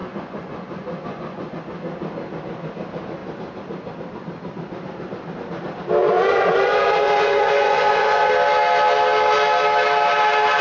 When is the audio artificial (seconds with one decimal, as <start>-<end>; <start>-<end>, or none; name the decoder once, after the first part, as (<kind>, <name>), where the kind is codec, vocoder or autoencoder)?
0.0-1.6 (vocoder, Vocos); 6.0-8.3